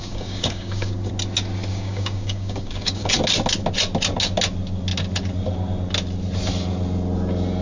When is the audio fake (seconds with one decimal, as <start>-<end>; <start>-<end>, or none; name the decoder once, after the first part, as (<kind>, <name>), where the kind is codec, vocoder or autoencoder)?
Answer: 0.0-1.1 (codec, DAC); 1.7-3.2

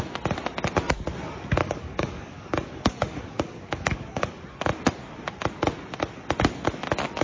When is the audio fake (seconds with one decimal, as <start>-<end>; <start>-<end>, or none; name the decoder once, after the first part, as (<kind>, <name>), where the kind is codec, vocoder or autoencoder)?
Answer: 1.6-4.4 (codec, DAC)